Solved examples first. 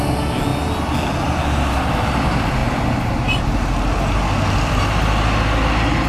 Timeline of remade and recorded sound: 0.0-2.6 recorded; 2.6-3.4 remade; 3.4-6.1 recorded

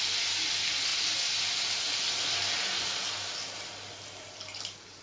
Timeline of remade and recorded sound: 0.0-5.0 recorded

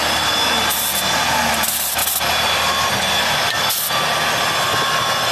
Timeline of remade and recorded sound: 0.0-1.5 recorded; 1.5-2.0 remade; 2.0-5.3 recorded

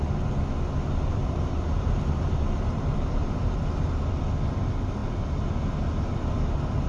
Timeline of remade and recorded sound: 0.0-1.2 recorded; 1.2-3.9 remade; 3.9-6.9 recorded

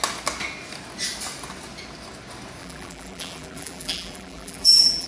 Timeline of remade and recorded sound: 0.0-2.6 recorded; 2.6-5.1 remade

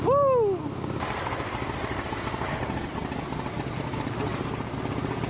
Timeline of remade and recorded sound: 0.0-0.6 recorded; 0.6-2.1 remade; 2.1-4.3 recorded; 4.3-4.8 remade; 4.8-5.3 recorded